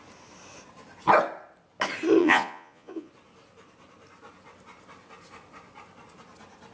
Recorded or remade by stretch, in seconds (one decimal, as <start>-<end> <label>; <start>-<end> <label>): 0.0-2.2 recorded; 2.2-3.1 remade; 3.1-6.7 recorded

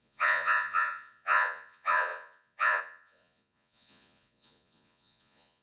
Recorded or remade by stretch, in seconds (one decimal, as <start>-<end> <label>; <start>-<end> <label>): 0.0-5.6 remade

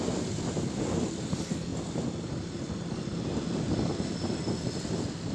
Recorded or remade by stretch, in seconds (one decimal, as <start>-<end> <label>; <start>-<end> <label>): 0.0-5.3 recorded